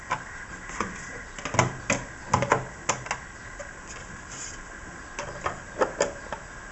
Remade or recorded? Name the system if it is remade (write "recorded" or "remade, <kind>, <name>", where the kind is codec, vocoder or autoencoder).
recorded